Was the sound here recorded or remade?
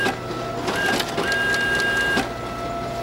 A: recorded